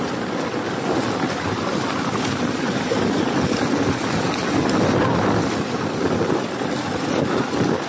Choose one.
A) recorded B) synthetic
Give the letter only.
A